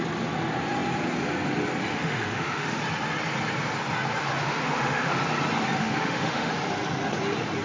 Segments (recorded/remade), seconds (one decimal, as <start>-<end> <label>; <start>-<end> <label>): 0.0-1.9 recorded; 1.9-2.8 remade; 2.8-4.4 recorded; 4.4-5.2 remade; 5.2-5.8 recorded; 5.8-6.5 remade; 6.5-7.6 recorded